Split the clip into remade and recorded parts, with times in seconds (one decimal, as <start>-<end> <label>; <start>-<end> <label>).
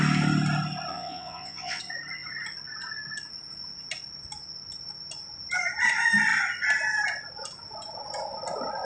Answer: 0.0-0.9 recorded; 0.9-1.8 remade; 1.8-8.8 recorded